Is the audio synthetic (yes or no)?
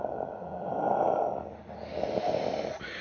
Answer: no